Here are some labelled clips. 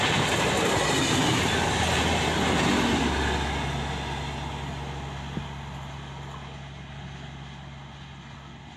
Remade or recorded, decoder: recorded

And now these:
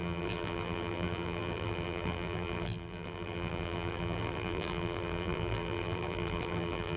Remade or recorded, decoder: remade, vocoder, BigVGAN v2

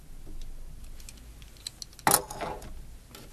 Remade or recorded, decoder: recorded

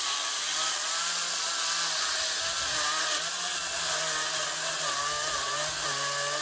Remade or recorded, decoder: recorded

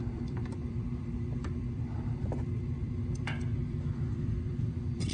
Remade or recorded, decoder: remade, vocoder, BigVGAN v2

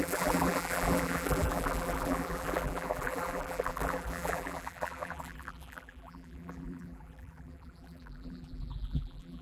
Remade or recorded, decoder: remade, vocoder, BigVGAN v2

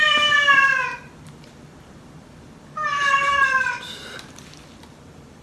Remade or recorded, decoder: remade, vocoder, BigVGAN v2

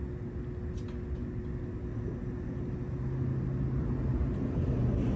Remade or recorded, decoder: recorded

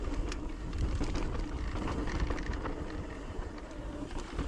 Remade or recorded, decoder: recorded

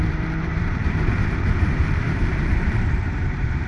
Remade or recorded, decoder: remade, vocoder, BigVGAN v2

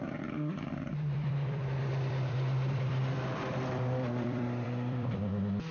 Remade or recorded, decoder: remade, vocoder, BigVGAN v2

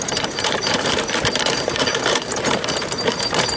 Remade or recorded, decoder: remade, vocoder, BigVGAN v2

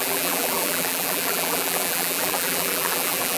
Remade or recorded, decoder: remade, vocoder, BigVGAN v2